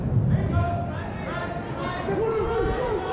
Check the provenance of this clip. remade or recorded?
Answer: recorded